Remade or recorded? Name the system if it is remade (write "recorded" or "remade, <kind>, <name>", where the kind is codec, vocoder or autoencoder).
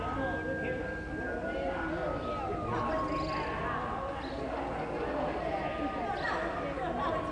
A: recorded